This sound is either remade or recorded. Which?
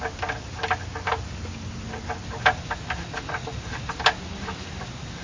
recorded